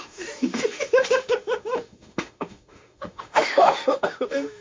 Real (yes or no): no